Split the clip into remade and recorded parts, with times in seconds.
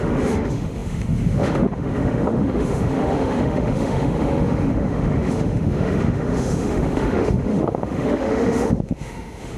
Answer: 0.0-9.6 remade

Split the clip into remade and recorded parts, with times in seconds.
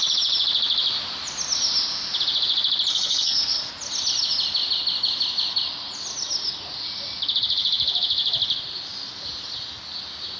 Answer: 0.0-2.9 recorded; 2.9-3.7 remade; 3.7-10.4 recorded